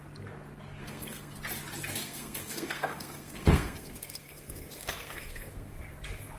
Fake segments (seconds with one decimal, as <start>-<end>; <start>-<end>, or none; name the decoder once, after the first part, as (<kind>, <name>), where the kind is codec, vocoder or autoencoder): 0.8-1.4 (codec, SNAC); 2.0-5.8